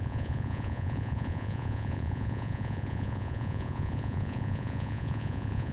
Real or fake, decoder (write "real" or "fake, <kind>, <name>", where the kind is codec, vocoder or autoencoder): fake, vocoder, Vocos